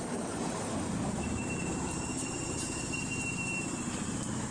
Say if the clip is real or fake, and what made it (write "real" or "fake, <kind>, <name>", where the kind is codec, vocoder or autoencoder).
fake, vocoder, BigVGAN v2